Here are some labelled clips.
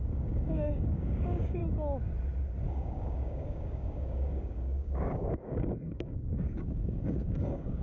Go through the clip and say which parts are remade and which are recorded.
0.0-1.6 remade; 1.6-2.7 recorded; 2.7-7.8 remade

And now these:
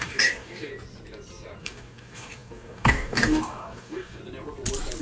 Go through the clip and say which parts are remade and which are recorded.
0.0-0.7 remade; 0.7-1.6 recorded; 1.6-4.2 remade; 4.2-5.0 recorded

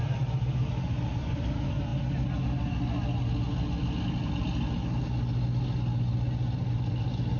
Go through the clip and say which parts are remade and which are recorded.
0.0-7.4 recorded

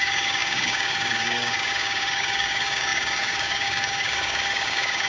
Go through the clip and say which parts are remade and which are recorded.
0.0-5.1 remade

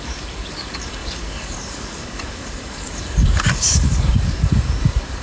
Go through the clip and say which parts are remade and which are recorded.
0.0-5.2 remade

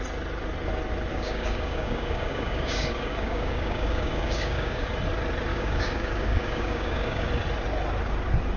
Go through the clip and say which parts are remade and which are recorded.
0.0-1.1 recorded; 1.1-4.9 remade; 4.9-5.5 recorded; 5.5-7.3 remade; 7.3-8.6 recorded

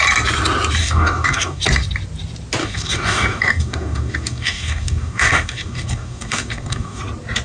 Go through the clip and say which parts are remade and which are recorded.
0.0-0.8 recorded; 0.8-1.6 remade; 1.6-2.6 recorded; 2.6-7.0 remade; 7.0-7.4 recorded